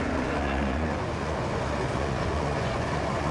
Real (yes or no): no